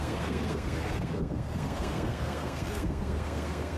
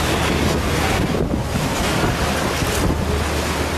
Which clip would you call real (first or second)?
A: second